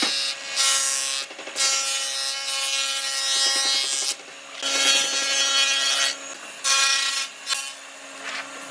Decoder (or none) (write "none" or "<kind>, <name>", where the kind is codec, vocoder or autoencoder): none